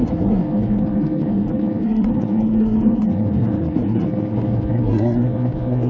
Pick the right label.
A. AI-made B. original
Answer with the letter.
A